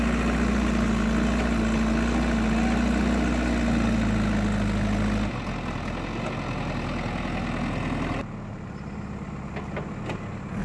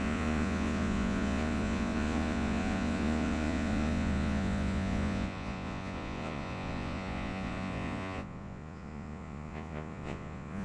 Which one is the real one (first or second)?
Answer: first